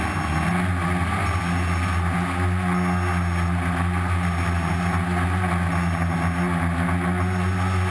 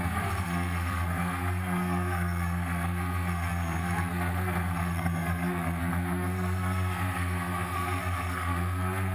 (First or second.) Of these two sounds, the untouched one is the first